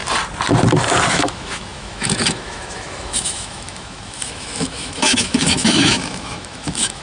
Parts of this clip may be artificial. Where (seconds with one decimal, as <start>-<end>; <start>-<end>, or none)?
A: 1.1-7.0